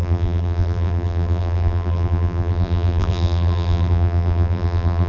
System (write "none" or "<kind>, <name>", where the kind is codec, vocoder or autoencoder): vocoder, BigVGAN v2